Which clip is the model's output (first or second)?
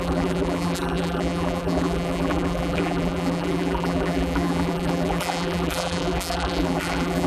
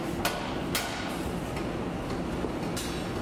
first